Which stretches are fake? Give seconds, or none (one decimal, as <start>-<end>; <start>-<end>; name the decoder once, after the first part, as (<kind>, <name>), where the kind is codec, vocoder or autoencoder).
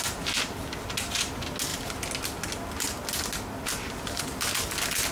none